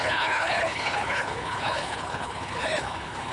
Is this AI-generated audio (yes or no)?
yes